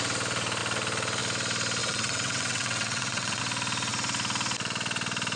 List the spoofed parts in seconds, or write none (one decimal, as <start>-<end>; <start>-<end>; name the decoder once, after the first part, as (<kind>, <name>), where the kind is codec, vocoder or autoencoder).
1.8-3.4 (vocoder, WaveNeXt)